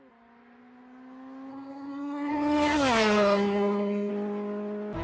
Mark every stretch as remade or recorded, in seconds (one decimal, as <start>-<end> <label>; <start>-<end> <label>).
0.0-1.5 recorded; 1.5-4.1 remade; 4.1-5.0 recorded